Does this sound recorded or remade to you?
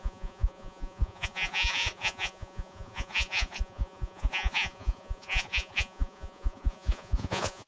remade